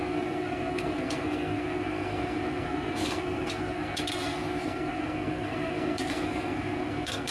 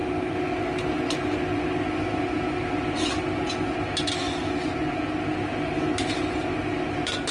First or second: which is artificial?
first